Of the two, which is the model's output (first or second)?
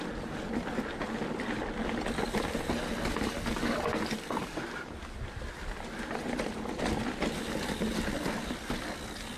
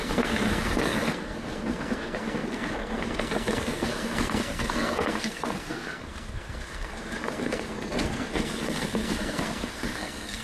second